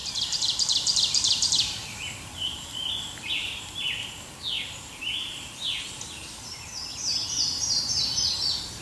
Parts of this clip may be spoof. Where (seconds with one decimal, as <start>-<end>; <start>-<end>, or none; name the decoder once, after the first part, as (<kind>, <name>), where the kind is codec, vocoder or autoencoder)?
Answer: 0.0-3.6 (vocoder, BigVGAN v2); 6.9-7.9